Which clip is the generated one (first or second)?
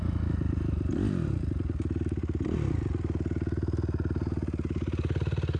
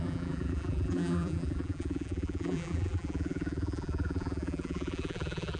second